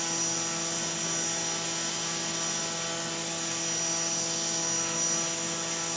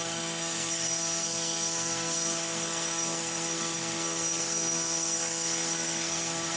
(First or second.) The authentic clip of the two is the first